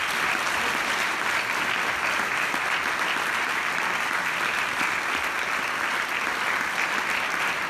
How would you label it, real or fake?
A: real